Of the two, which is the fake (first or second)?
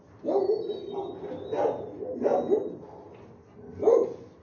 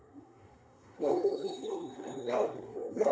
second